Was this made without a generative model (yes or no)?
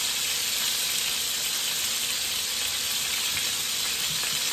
yes